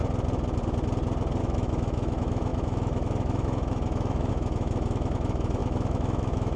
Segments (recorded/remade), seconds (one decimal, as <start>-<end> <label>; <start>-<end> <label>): 0.0-1.4 recorded; 1.4-6.6 remade